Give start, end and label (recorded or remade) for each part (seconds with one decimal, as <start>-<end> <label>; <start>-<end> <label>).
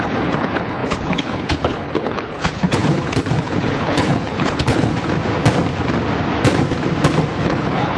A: 0.0-4.9 remade; 4.9-7.4 recorded; 7.4-8.0 remade